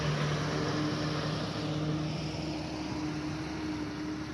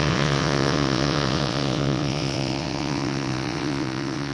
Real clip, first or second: first